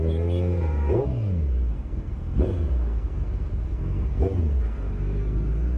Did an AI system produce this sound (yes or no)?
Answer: yes